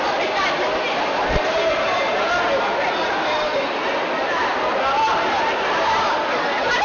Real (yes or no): yes